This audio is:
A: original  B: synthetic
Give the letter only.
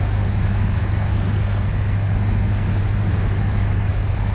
B